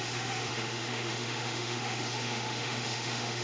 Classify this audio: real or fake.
fake